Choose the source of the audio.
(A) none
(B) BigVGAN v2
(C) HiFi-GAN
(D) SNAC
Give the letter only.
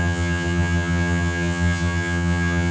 C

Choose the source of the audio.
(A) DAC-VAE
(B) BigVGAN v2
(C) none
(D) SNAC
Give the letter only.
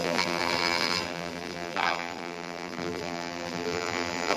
B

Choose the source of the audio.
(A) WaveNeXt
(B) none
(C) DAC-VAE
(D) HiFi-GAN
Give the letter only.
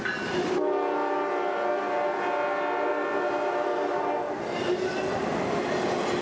B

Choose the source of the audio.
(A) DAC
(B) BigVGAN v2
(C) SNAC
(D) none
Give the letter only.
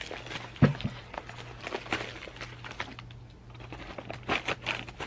D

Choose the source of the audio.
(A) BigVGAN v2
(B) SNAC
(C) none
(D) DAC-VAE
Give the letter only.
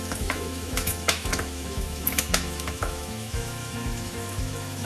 D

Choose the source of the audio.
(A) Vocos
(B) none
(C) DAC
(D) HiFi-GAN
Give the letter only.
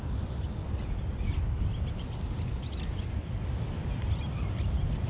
B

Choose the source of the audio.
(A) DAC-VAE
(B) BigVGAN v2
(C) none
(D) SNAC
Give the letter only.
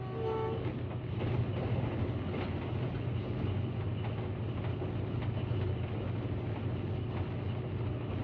C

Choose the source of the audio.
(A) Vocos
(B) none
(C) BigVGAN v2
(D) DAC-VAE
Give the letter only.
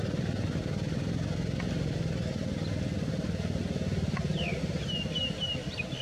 B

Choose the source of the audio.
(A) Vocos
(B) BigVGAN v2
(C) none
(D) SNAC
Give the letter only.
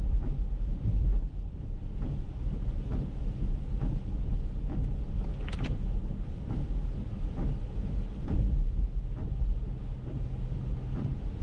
C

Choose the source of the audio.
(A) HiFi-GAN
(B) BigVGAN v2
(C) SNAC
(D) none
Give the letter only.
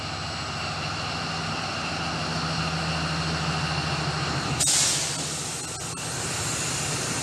D